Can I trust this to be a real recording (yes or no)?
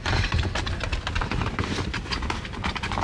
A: no